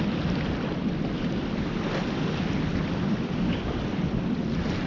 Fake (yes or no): no